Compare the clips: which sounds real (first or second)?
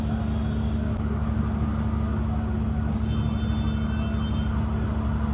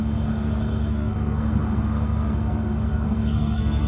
first